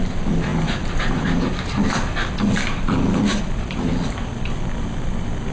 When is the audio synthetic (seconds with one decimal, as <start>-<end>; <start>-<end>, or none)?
none